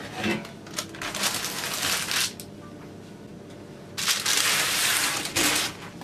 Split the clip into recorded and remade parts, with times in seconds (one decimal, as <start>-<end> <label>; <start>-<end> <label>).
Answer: 0.0-6.0 recorded